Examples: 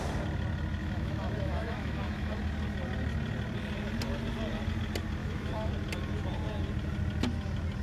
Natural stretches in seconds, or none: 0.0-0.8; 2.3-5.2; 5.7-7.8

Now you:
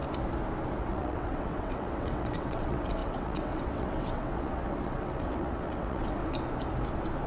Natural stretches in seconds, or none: 0.0-0.8; 6.2-7.3

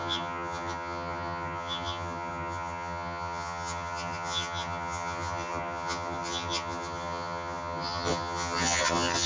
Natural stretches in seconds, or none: none

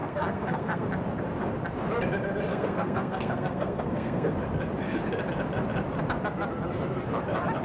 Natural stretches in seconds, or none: 0.9-2.5; 4.3-7.6

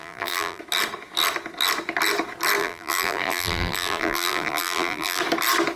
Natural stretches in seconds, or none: 0.6-2.6; 5.2-5.8

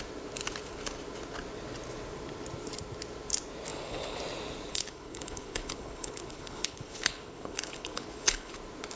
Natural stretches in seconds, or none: 0.0-3.7; 4.2-4.7; 8.5-9.0